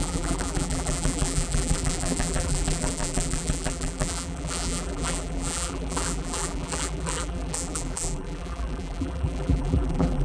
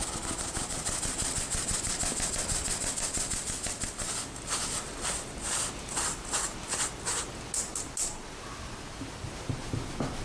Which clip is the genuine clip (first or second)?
second